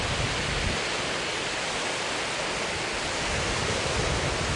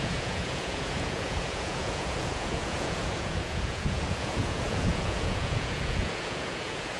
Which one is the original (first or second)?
first